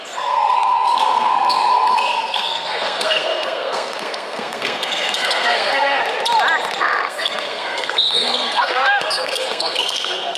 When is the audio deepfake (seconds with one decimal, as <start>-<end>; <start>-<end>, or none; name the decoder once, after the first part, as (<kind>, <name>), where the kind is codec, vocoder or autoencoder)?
0.0-6.0 (codec, SNAC); 6.8-10.4